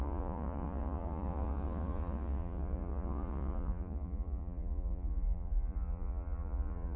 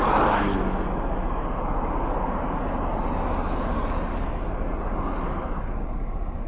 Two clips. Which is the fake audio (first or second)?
first